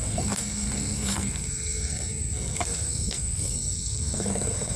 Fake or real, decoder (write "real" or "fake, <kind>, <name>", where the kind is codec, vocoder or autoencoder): fake, codec, SNAC